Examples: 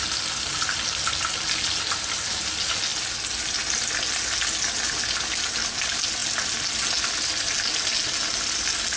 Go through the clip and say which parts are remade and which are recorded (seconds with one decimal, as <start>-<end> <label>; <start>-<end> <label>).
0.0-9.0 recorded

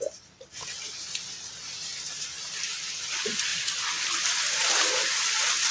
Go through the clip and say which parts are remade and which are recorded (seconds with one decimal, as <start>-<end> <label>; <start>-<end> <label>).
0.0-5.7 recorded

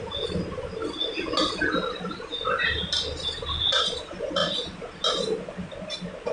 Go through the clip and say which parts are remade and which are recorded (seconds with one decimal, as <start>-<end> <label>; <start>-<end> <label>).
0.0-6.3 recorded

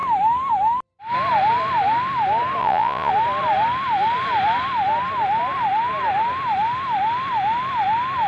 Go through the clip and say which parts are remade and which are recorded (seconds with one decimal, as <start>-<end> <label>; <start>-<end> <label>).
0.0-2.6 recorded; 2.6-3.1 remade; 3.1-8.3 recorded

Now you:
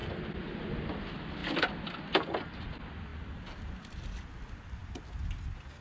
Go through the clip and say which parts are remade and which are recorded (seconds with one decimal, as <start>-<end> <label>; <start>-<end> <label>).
0.0-5.8 recorded

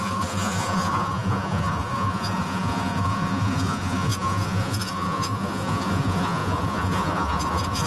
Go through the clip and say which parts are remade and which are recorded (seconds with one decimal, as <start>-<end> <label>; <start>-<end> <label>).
0.0-7.9 remade

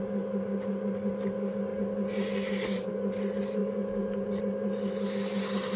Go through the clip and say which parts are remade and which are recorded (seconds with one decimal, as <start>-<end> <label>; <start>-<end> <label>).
0.0-5.8 recorded

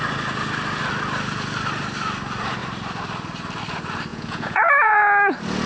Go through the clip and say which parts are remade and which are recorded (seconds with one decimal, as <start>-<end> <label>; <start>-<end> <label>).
0.0-4.1 recorded; 4.1-5.0 remade; 5.0-5.7 recorded